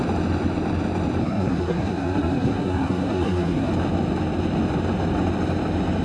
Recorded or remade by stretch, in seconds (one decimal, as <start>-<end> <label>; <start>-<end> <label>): 0.0-1.2 recorded; 1.2-3.7 remade; 3.7-6.0 recorded